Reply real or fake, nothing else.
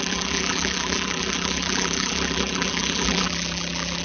fake